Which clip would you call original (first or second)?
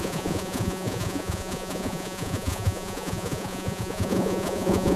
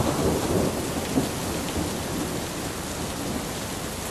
second